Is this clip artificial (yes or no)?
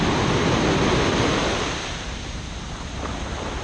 no